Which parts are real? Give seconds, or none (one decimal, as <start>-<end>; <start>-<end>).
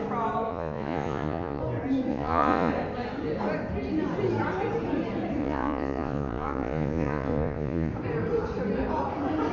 0.0-0.5; 1.6-2.1; 2.7-5.4; 7.9-9.5